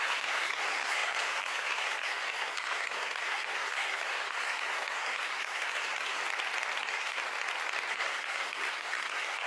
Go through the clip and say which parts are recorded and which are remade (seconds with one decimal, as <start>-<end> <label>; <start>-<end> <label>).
0.0-6.2 remade; 6.2-6.8 recorded; 6.8-7.2 remade; 7.2-7.9 recorded; 7.9-9.5 remade